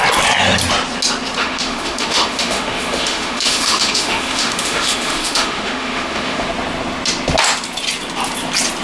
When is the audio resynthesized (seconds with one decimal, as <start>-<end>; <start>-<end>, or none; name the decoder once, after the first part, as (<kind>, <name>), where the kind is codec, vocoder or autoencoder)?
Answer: 1.4-6.5 (autoencoder, DAC-VAE)